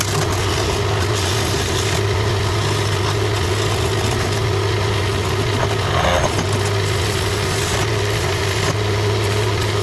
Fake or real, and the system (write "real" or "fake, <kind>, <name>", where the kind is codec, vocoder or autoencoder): real